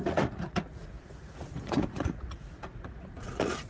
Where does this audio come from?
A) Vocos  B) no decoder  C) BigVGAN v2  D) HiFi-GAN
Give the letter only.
A